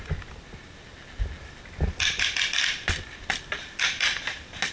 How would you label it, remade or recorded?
recorded